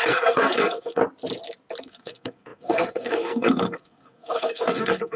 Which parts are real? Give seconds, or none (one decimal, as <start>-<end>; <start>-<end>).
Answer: 1.0-1.8